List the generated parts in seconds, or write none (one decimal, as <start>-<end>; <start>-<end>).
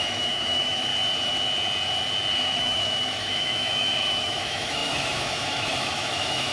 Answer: 0.0-0.9; 2.3-6.5